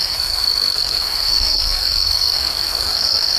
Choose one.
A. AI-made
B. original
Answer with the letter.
A